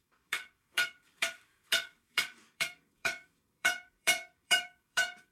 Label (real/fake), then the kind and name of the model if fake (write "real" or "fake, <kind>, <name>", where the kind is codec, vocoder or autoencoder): fake, codec, DAC